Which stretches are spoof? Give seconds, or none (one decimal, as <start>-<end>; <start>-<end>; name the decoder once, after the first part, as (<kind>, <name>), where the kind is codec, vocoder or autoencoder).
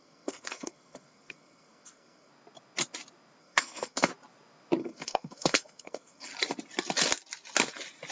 0.0-2.3 (codec, SNAC); 3.4-4.1; 4.8-6.3